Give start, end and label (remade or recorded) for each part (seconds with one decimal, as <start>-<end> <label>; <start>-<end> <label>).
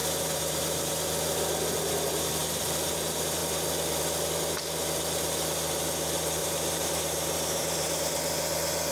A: 0.0-0.9 remade; 0.9-2.4 recorded; 2.4-2.9 remade; 2.9-6.4 recorded; 6.4-8.0 remade; 8.0-8.9 recorded